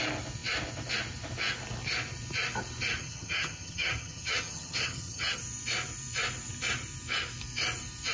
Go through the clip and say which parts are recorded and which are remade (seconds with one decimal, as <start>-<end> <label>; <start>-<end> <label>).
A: 0.0-3.0 recorded; 3.0-5.4 remade; 5.4-8.1 recorded